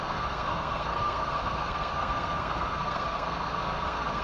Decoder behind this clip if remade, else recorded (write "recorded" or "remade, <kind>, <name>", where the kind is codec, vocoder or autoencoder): remade, codec, SNAC